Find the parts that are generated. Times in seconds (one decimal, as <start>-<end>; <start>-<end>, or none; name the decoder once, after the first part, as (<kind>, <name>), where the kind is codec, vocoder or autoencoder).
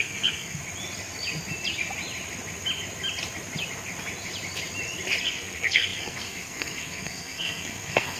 0.0-0.6 (codec, SNAC); 5.2-8.2